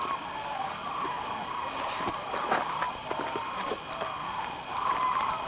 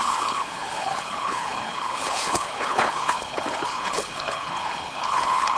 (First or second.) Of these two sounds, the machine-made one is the second